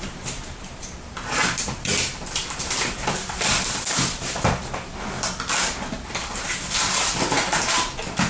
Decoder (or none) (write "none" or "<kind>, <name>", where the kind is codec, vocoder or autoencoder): vocoder, BigVGAN v2